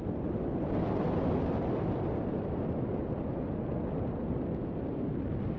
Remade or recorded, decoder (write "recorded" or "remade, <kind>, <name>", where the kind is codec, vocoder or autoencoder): recorded